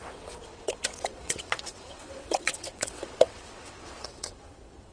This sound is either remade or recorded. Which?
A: remade